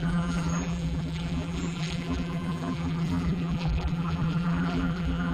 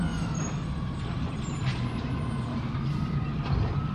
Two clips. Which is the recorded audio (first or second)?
second